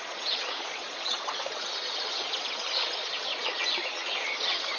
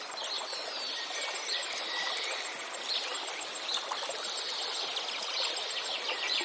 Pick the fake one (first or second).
first